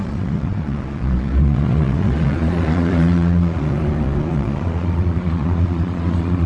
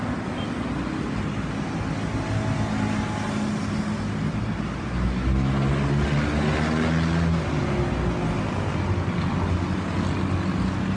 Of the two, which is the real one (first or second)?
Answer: second